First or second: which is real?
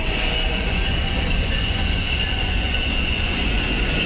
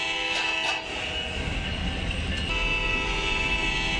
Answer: second